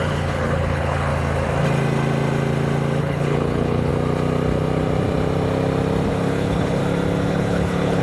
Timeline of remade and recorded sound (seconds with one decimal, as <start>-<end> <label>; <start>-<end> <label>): 0.0-1.1 remade; 1.1-3.0 recorded; 3.0-3.9 remade; 3.9-6.1 recorded; 6.1-6.8 remade; 6.8-7.3 recorded; 7.3-8.0 remade